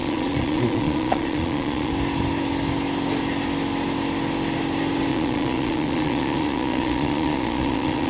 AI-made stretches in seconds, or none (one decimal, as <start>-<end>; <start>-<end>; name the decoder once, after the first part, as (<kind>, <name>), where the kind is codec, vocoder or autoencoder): 0.0-1.9 (vocoder, Vocos); 5.1-8.1